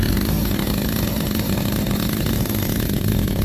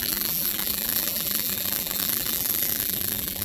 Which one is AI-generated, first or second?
second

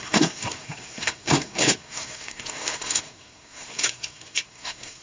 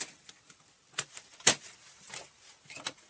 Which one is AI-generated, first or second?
first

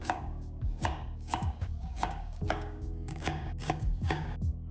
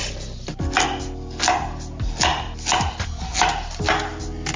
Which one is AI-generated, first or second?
first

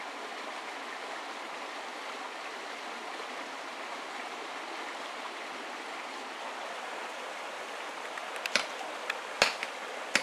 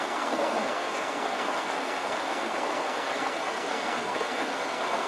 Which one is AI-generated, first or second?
second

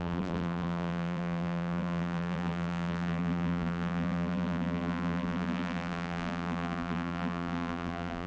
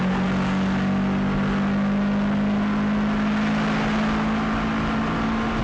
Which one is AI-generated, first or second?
first